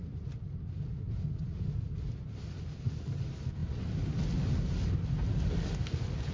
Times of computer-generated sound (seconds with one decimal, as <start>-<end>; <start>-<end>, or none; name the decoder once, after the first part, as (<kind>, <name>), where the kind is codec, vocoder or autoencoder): none